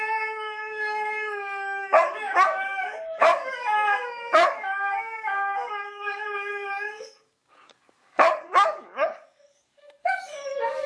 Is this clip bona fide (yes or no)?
no